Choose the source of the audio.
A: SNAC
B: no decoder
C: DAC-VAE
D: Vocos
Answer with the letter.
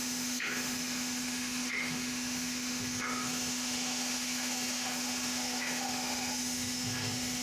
C